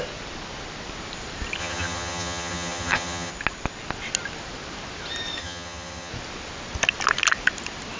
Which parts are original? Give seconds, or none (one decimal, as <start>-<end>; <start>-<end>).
0.0-1.6; 3.3-5.4; 6.1-8.0